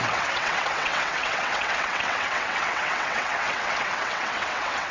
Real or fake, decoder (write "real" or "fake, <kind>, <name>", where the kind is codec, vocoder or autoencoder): fake, vocoder, WaveNeXt